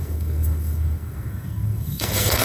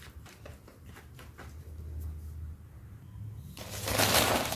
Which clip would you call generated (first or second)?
first